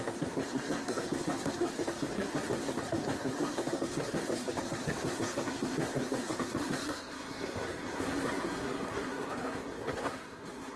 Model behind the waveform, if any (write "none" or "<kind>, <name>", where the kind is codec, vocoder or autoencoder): codec, SNAC